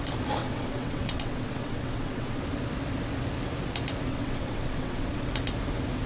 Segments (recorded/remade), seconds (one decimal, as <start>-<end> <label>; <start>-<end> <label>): 0.0-0.4 recorded; 0.4-2.4 remade; 2.4-4.1 recorded; 4.1-5.3 remade; 5.3-6.1 recorded